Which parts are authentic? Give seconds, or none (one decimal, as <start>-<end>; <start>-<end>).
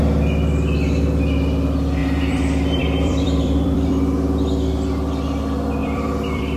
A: 0.0-2.0; 3.9-5.8